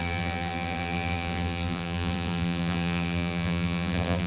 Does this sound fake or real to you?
fake